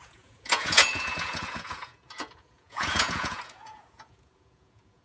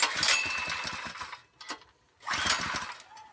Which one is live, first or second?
second